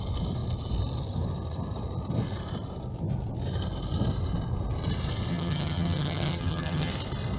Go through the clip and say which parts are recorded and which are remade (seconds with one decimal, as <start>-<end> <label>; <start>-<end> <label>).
0.0-5.3 recorded; 5.3-6.9 remade; 6.9-7.4 recorded